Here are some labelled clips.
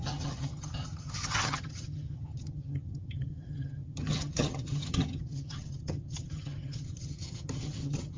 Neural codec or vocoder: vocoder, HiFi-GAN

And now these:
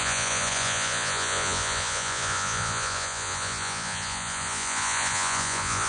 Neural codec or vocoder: vocoder, Vocos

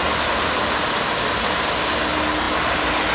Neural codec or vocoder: none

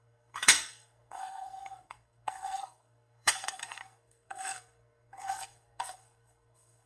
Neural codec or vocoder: codec, SNAC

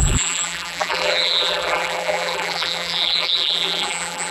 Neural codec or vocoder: vocoder, BigVGAN v2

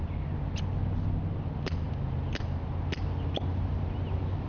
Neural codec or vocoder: none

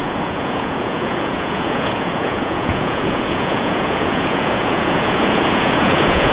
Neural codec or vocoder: vocoder, Vocos